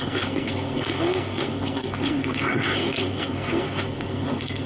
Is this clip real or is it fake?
fake